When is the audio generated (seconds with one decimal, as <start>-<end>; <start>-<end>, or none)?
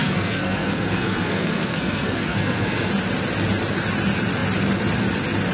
0.0-2.9